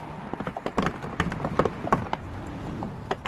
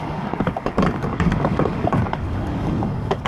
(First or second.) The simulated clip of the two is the second